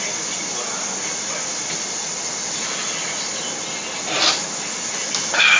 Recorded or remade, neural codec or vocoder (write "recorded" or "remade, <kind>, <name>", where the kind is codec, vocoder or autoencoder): recorded